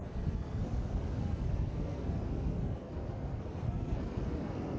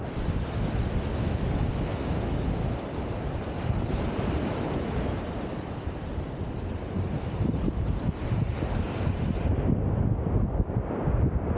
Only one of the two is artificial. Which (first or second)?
first